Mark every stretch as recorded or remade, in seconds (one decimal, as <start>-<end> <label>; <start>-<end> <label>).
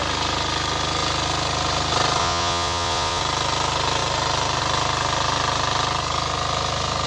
0.0-2.2 recorded; 2.2-3.2 remade; 3.2-7.1 recorded